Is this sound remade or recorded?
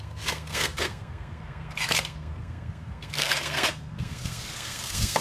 remade